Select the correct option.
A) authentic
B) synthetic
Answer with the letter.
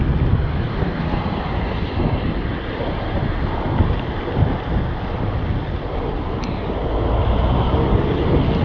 A